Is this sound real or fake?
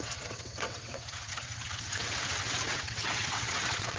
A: fake